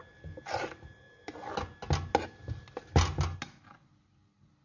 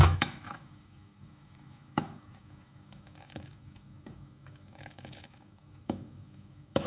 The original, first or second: first